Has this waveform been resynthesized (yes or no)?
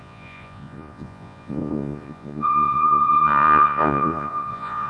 yes